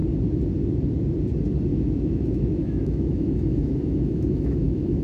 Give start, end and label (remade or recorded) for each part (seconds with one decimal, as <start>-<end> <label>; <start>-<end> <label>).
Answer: 0.0-1.7 recorded; 1.7-5.0 remade